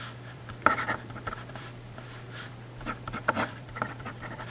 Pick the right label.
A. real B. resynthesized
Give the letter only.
B